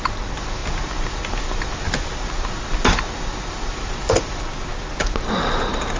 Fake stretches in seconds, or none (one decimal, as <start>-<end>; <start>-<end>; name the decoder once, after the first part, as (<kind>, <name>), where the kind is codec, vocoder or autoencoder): none